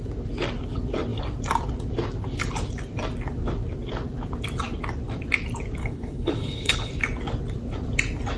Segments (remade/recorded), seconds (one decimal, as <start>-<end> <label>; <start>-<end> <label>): 0.0-5.8 recorded; 5.8-6.9 remade; 6.9-8.4 recorded